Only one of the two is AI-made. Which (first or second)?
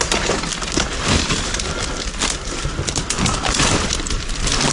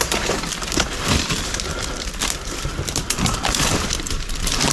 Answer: second